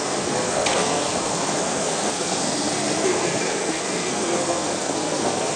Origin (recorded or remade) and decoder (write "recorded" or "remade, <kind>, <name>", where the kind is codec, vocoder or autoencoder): remade, codec, SNAC